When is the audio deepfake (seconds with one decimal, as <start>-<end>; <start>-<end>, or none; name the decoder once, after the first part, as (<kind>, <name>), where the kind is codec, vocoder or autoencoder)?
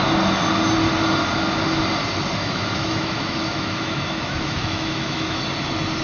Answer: 2.4-5.4 (autoencoder, DAC-VAE)